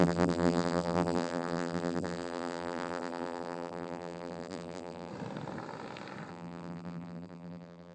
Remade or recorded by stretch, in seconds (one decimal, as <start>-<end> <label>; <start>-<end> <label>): 0.0-5.1 remade; 5.1-6.3 recorded; 6.3-7.9 remade